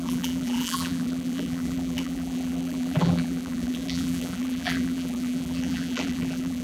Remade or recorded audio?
remade